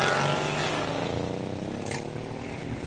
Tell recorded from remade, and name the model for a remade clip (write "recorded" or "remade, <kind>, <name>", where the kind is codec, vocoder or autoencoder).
recorded